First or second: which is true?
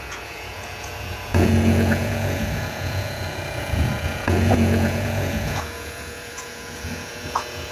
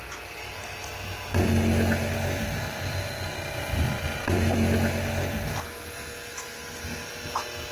second